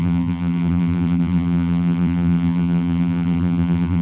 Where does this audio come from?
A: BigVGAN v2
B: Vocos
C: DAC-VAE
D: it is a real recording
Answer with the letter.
A